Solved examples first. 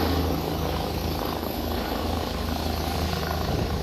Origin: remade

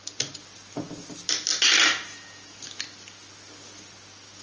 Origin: recorded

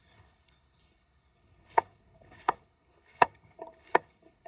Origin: remade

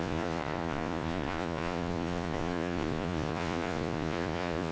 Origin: remade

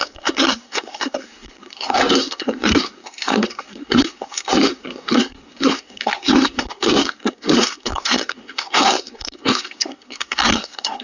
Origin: remade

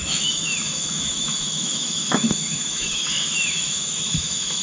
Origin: remade